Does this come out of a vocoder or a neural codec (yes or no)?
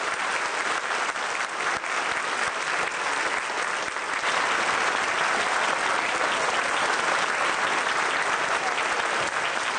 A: no